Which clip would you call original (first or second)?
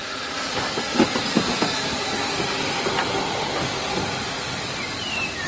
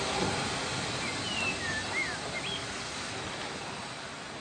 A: second